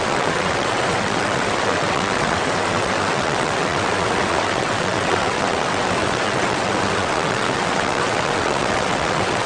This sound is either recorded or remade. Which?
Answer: remade